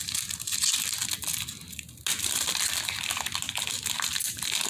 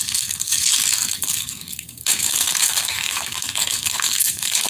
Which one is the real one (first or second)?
first